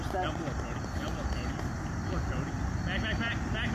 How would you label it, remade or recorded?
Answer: recorded